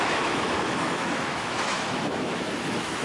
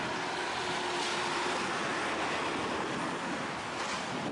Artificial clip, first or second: first